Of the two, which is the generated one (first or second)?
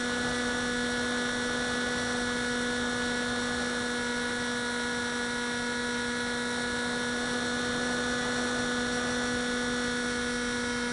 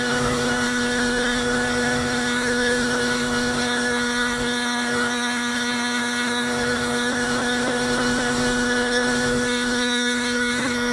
second